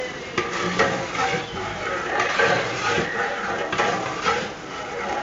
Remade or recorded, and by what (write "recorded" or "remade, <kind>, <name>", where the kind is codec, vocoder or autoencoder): remade, vocoder, BigVGAN v2